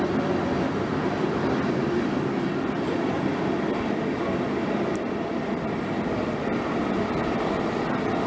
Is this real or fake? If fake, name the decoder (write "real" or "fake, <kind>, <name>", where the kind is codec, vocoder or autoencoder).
fake, vocoder, BigVGAN v2